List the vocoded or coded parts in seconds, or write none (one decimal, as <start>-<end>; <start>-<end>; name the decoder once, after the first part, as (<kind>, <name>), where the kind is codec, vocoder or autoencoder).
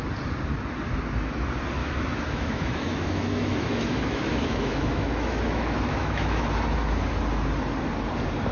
1.8-6.5 (autoencoder, DAC-VAE)